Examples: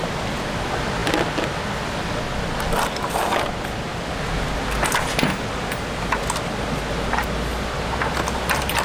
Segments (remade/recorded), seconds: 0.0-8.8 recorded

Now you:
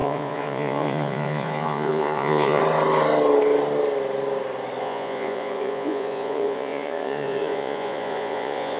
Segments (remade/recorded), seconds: 0.0-2.6 remade; 2.6-4.8 recorded; 4.8-8.8 remade

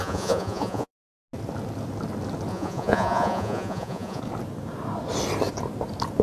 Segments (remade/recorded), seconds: 0.0-0.9 remade; 0.9-2.5 recorded; 2.5-4.2 remade; 4.2-6.2 recorded

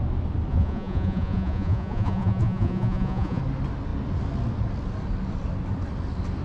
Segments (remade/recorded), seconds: 0.0-0.5 recorded; 0.5-3.4 remade; 3.4-6.4 recorded

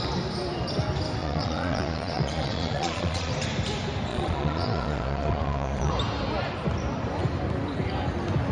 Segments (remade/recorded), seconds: 0.0-1.2 recorded; 1.2-3.3 remade; 3.3-4.1 recorded; 4.1-5.9 remade; 5.9-8.5 recorded

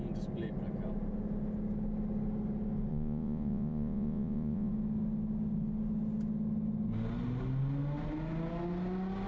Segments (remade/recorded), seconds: 0.0-2.9 recorded; 2.9-4.7 remade; 4.7-9.3 recorded